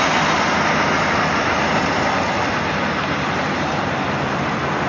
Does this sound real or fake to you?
real